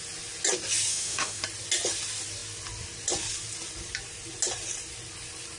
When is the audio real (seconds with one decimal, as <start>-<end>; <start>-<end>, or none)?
0.0-0.9; 1.4-5.6